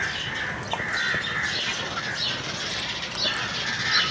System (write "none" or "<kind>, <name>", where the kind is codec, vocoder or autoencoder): none